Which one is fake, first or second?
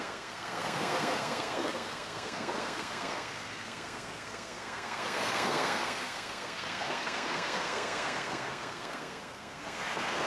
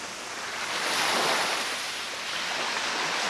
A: first